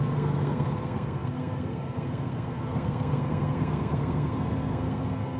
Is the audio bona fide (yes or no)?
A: no